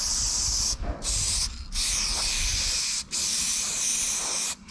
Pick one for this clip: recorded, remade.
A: recorded